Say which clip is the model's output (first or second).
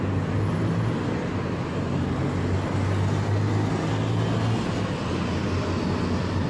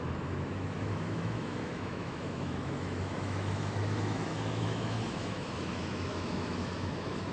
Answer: second